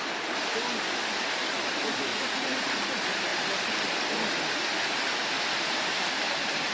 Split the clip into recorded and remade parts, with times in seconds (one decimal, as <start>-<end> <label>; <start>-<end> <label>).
0.0-2.1 recorded; 2.1-2.8 remade; 2.8-6.7 recorded